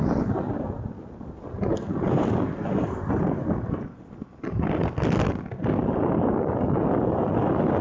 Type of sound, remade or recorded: remade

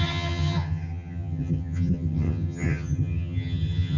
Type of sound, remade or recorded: remade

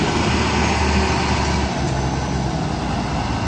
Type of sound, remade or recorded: recorded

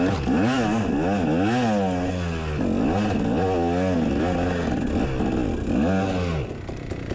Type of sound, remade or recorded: recorded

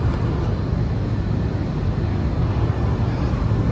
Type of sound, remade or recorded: recorded